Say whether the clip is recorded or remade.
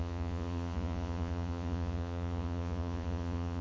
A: remade